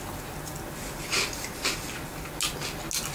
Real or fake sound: real